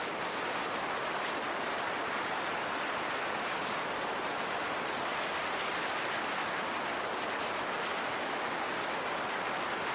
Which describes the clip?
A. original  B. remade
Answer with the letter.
A